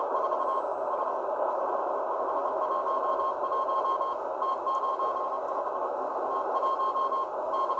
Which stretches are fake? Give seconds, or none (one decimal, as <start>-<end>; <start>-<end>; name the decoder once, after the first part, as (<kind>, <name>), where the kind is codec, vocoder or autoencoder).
none